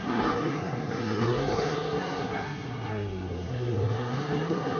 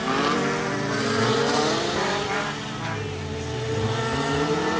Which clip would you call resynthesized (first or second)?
first